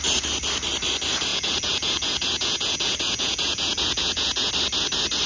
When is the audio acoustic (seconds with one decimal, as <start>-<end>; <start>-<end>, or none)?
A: 0.0-1.3; 4.5-5.3